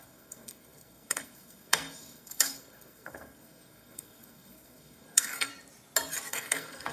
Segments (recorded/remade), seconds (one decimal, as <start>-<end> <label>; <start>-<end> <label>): 0.0-5.5 remade; 5.5-6.3 recorded; 6.3-6.9 remade